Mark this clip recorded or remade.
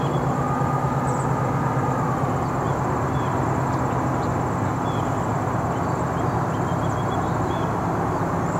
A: recorded